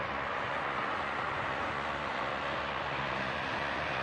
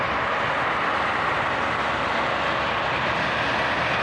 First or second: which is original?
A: second